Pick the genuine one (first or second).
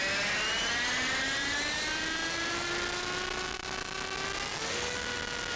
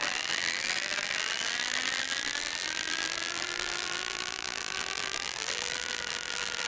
first